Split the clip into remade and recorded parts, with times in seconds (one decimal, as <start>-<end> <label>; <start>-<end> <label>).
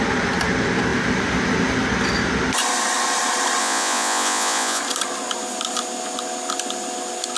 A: 0.0-3.6 recorded; 3.6-4.8 remade; 4.8-7.4 recorded